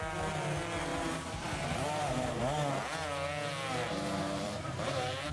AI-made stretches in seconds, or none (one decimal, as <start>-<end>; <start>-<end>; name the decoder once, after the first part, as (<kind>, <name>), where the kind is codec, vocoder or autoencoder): 0.9-2.4 (vocoder, BigVGAN v2); 3.8-5.3